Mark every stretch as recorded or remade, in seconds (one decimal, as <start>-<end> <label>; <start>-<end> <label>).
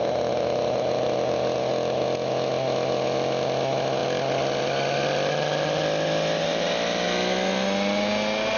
0.0-8.6 recorded